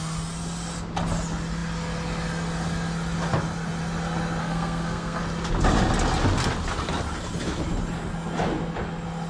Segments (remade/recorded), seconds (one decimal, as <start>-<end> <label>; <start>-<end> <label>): 0.0-4.4 recorded; 4.4-5.2 remade; 5.2-9.3 recorded